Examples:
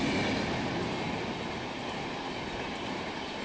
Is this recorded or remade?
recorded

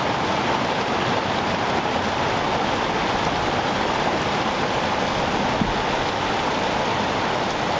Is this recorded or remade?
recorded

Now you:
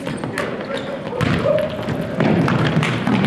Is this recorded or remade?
recorded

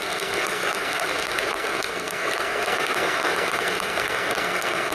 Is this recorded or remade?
remade